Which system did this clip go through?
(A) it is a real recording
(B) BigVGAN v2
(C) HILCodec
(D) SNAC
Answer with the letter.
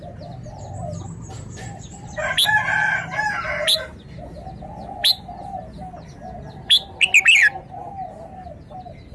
A